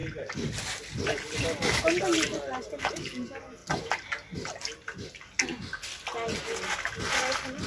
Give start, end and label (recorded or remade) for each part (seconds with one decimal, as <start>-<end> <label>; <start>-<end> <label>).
0.0-7.7 recorded